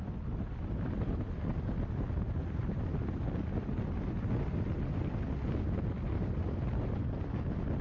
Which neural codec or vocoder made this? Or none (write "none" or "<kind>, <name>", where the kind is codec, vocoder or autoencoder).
none